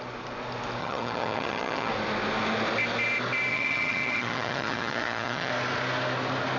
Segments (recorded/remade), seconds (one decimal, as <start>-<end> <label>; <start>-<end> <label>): 0.0-0.8 recorded; 0.8-1.9 remade; 1.9-3.5 recorded; 3.5-5.5 remade; 5.5-6.6 recorded